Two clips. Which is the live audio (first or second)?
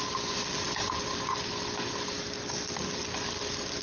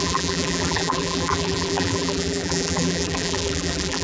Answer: first